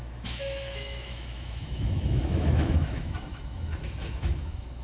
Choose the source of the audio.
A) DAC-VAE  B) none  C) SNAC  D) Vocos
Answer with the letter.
A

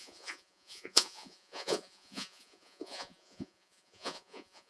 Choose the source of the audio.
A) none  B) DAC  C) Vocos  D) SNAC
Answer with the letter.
C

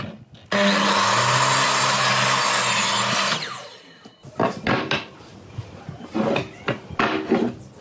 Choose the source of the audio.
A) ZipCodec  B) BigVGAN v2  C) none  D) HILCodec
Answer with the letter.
C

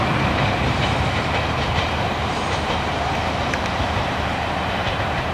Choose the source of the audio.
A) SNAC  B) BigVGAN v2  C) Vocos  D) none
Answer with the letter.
B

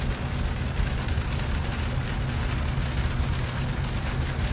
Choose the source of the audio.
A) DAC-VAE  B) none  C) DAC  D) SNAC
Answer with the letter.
B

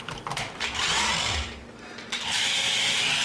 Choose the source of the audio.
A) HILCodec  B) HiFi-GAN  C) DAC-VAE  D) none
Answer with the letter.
D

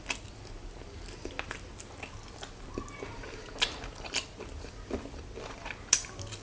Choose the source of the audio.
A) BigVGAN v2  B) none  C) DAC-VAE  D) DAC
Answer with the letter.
B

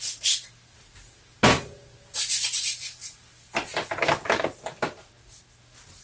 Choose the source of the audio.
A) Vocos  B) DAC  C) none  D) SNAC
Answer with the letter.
C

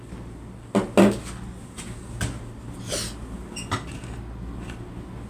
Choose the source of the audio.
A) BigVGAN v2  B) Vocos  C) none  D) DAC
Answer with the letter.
C